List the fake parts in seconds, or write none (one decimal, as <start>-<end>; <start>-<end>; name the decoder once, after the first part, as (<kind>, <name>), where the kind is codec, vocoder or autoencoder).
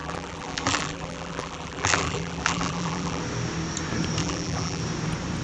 0.0-3.2 (vocoder, BigVGAN v2); 4.2-4.8